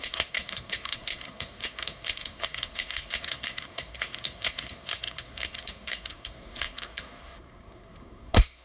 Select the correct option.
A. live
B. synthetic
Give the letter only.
B